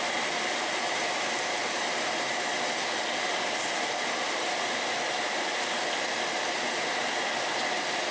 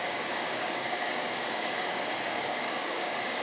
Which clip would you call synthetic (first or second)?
second